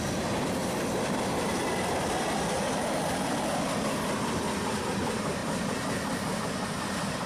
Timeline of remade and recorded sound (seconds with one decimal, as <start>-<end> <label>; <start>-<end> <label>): 0.0-7.3 recorded